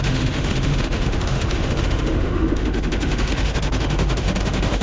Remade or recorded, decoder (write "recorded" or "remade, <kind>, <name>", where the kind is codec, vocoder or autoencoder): remade, autoencoder, DAC-VAE